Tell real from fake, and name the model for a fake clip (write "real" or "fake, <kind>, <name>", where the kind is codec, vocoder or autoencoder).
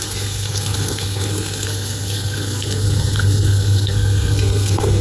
fake, codec, SNAC